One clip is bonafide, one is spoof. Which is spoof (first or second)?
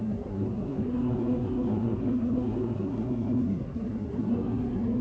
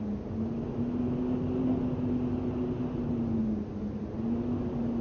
first